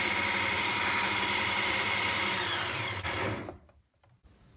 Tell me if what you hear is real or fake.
fake